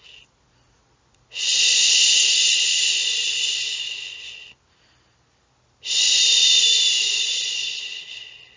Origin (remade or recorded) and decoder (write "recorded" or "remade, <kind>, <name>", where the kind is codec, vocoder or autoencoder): recorded